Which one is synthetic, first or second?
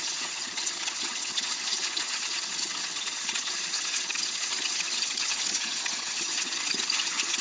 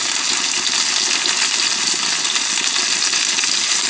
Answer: first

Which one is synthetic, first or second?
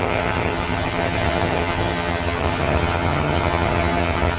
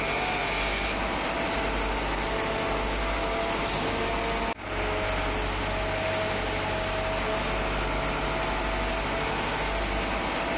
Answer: first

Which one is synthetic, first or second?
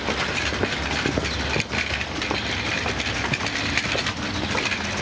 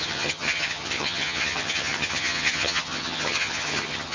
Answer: second